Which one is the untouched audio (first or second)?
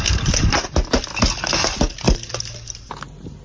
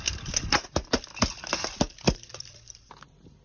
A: first